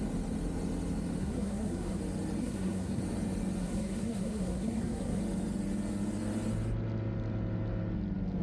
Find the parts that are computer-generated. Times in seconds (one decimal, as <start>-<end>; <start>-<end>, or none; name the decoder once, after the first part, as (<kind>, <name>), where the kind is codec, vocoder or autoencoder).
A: 1.2-2.0 (codec, SNAC); 2.4-3.0; 3.6-5.2